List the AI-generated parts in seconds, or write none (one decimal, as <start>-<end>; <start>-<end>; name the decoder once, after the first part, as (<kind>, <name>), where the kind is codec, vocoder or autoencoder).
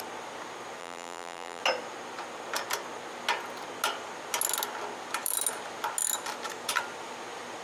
0.8-1.6 (vocoder, BigVGAN v2)